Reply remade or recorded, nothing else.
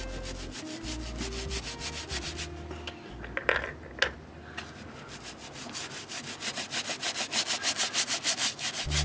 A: recorded